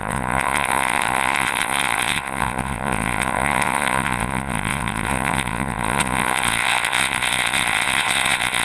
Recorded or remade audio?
remade